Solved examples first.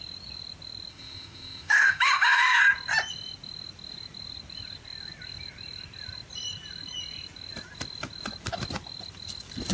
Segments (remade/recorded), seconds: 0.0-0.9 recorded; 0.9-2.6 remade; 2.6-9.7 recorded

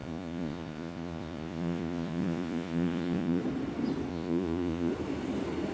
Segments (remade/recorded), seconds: 0.0-3.4 remade; 3.4-4.1 recorded; 4.1-4.9 remade; 4.9-5.7 recorded

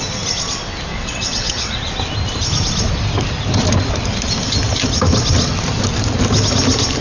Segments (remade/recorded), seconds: 0.0-0.9 recorded; 0.9-1.8 remade; 1.8-7.0 recorded

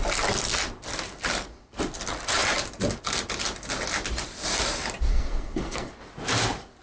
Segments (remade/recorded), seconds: 0.0-5.1 recorded; 5.1-5.9 remade; 5.9-6.8 recorded

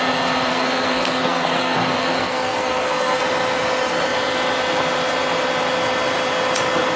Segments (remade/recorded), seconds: 0.0-0.5 recorded; 0.5-3.2 remade; 3.2-7.0 recorded